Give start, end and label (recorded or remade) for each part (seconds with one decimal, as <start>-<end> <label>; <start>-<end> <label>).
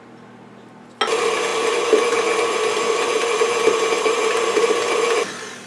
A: 0.0-5.7 recorded